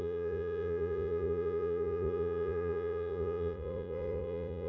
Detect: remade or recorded remade